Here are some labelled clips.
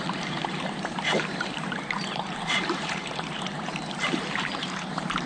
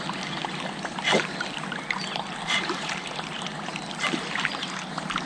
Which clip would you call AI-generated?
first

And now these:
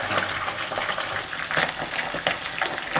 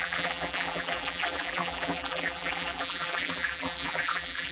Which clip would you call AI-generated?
second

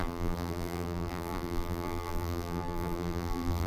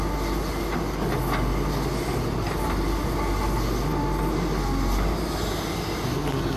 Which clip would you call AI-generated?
first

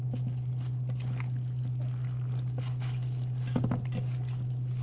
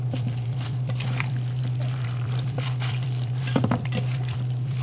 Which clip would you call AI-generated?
second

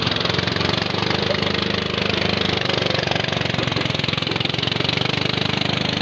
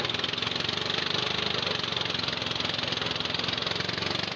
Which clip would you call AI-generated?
first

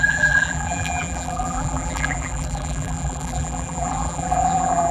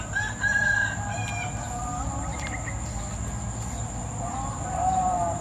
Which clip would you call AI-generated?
first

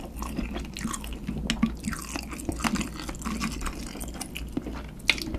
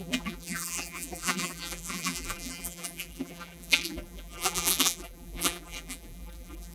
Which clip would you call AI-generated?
second